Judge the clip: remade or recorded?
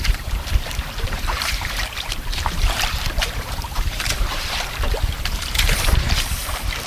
remade